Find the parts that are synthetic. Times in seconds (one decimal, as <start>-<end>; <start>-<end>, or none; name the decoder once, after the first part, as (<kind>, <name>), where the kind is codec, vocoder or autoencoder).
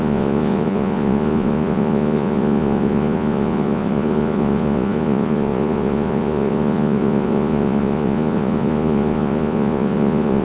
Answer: 0.0-10.4 (vocoder, Vocos)